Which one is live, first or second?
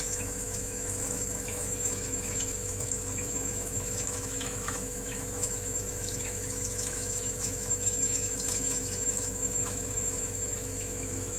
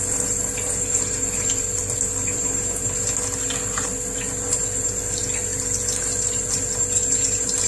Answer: second